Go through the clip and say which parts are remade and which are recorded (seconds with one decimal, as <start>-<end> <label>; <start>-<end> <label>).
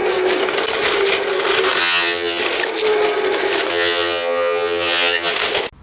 0.0-1.8 recorded; 1.8-2.4 remade; 2.4-3.7 recorded; 3.7-5.3 remade; 5.3-5.8 recorded